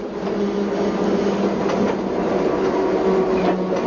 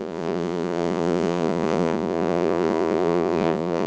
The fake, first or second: second